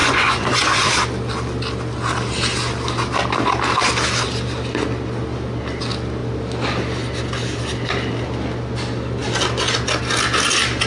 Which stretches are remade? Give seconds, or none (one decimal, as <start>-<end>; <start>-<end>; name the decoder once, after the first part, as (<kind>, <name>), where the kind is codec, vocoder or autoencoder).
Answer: 0.0-0.9 (vocoder, Vocos)